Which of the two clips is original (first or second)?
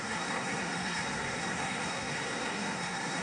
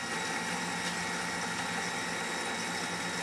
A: second